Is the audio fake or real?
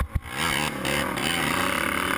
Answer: real